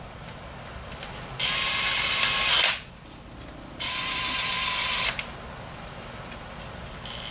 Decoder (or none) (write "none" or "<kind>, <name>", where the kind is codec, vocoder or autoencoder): none